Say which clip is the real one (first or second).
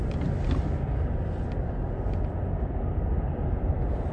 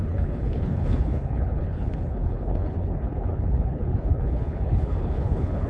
first